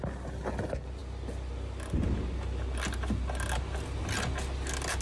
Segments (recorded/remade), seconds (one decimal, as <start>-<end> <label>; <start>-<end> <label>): 0.0-5.0 recorded